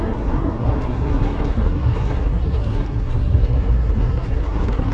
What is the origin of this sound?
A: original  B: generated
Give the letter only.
B